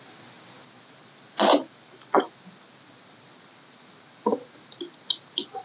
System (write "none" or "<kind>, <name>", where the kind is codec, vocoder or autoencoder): none